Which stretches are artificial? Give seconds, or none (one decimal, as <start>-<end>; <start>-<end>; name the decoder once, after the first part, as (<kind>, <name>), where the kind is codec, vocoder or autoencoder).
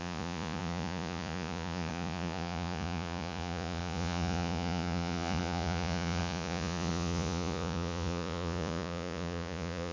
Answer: 0.0-9.9 (vocoder, Vocos)